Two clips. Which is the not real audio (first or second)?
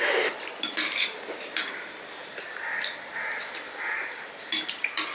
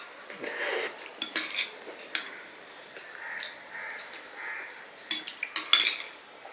first